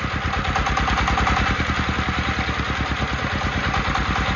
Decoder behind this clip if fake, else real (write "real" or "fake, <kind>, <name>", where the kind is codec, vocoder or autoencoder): real